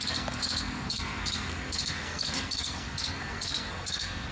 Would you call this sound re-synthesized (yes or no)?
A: yes